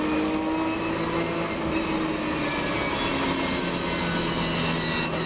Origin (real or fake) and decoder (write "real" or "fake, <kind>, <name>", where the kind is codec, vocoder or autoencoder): real